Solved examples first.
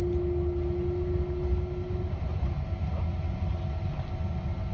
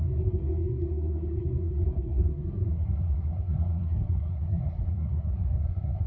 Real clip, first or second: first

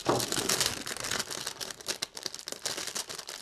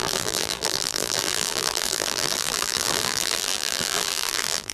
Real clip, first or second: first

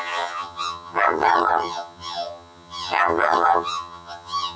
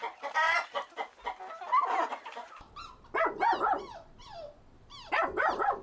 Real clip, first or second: second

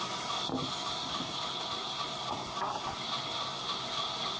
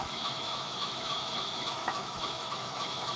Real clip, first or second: first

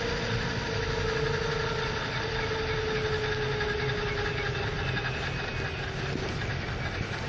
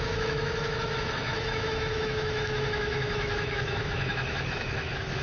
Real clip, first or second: first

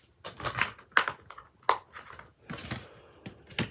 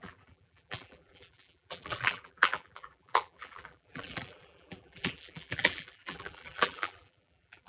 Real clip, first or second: first